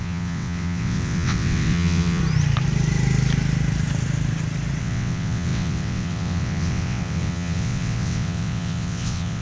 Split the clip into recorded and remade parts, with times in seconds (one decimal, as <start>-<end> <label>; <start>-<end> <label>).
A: 0.0-2.2 remade; 2.2-4.8 recorded; 4.8-9.4 remade